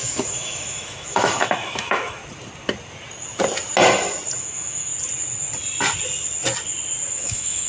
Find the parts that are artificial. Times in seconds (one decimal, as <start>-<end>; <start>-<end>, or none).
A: 0.0-2.2; 4.4-4.9; 7.1-7.7